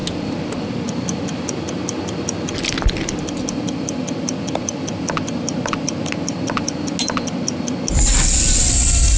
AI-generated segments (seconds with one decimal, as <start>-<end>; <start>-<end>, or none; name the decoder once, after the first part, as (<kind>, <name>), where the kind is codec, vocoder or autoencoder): none